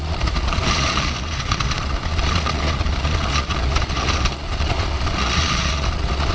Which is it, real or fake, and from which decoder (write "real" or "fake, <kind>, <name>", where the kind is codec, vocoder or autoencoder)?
fake, vocoder, Vocos